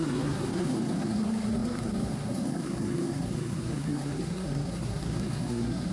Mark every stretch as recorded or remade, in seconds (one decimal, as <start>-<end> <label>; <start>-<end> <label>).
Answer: 0.0-5.9 remade